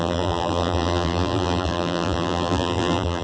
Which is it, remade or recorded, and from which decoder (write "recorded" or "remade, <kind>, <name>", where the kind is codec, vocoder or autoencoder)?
remade, vocoder, BigVGAN v2